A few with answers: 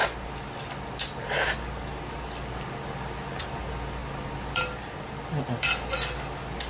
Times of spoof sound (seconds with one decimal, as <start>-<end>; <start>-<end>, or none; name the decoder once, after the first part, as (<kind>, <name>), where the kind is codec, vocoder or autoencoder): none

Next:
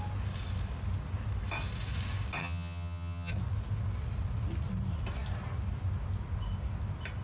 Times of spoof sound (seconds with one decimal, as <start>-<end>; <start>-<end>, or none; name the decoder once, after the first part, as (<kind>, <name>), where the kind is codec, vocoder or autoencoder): 2.4-3.3 (vocoder, HiFi-GAN)

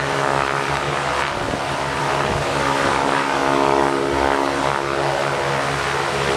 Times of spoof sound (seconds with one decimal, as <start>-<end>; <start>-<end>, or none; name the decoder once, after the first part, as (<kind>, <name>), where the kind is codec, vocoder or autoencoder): 0.0-1.1 (codec, DAC); 2.0-5.2